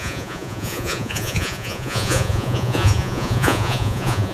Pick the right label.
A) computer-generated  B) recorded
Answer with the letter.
A